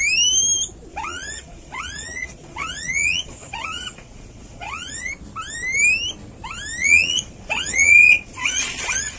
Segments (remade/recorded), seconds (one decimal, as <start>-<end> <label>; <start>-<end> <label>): 0.0-0.9 recorded; 0.9-5.1 remade; 5.1-6.8 recorded; 6.8-9.2 remade